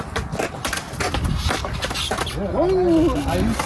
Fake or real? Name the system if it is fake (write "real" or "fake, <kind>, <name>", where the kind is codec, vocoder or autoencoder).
real